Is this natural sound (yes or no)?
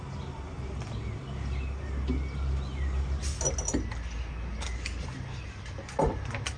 yes